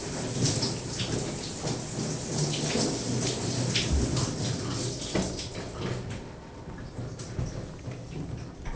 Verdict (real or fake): real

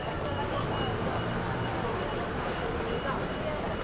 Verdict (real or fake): fake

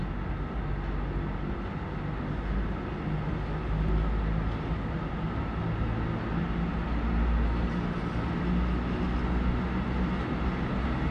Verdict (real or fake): real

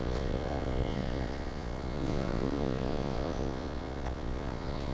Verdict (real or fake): fake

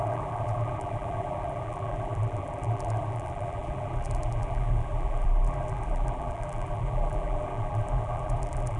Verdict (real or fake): fake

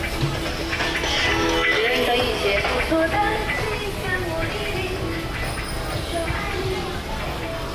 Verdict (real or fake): real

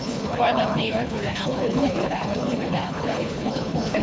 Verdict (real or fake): fake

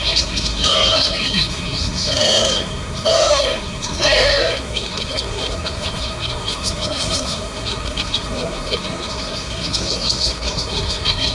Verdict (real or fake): fake